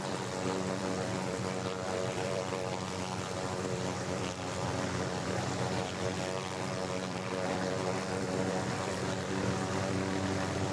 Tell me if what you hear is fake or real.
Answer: fake